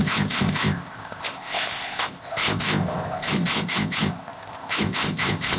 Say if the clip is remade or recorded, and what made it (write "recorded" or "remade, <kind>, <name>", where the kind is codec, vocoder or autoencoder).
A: remade, codec, ZipCodec